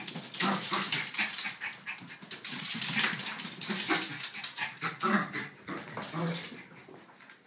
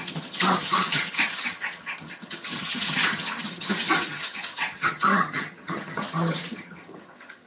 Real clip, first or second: first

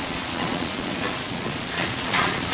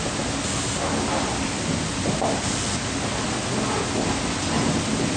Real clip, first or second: second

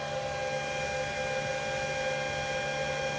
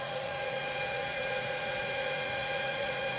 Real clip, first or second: first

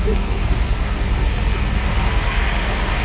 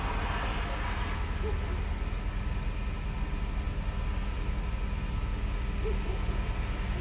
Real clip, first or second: second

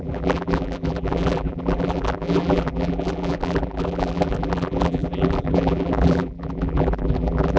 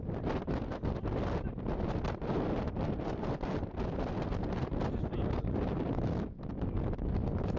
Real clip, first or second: second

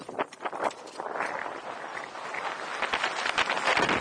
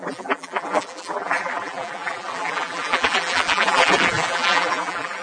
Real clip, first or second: first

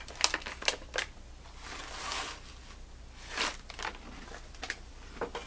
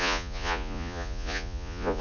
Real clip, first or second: first